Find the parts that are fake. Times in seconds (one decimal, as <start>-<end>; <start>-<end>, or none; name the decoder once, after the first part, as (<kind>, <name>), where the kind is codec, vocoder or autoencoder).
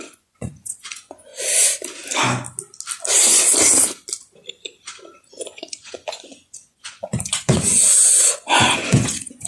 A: 0.0-1.3 (vocoder, Vocos); 5.3-9.5